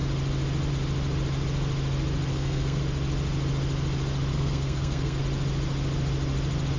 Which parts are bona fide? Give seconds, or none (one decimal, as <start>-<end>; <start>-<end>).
0.0-2.3; 2.8-4.3; 5.2-6.8